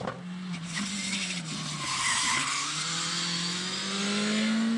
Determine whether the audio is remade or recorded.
recorded